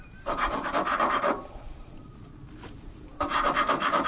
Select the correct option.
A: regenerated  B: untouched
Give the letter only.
A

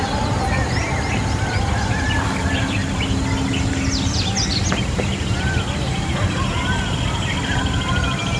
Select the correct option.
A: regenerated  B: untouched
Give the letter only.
B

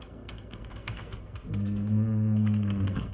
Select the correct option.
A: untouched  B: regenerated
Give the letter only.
B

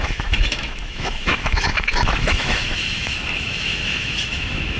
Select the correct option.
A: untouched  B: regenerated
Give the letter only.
B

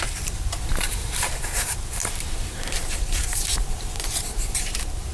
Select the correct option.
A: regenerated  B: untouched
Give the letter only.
A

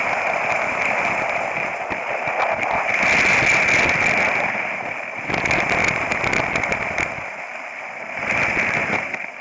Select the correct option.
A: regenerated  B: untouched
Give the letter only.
B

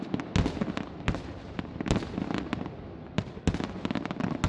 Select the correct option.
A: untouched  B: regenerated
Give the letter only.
A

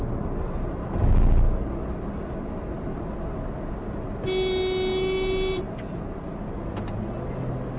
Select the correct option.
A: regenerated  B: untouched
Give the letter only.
B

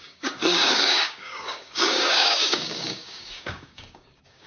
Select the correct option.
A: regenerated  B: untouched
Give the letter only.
A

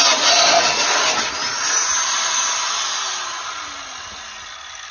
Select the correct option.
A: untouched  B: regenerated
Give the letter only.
A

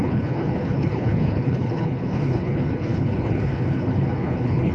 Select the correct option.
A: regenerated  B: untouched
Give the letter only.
A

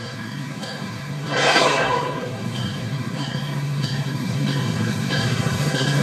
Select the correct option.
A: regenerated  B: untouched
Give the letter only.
A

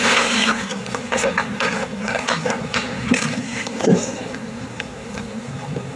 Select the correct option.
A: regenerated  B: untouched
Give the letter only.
A